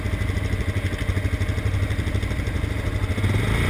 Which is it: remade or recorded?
recorded